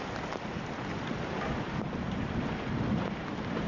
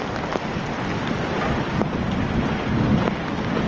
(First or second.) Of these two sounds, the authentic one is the second